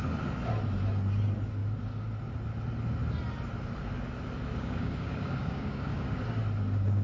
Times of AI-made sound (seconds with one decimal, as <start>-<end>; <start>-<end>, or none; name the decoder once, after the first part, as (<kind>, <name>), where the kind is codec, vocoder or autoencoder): 4.5-6.2 (codec, DAC)